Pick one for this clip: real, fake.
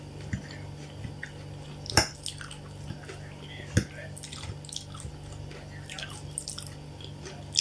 real